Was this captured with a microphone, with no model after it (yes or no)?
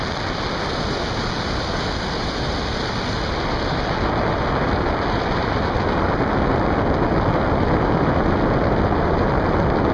yes